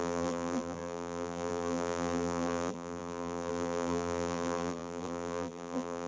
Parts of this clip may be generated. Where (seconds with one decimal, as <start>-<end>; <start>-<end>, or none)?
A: 0.0-6.1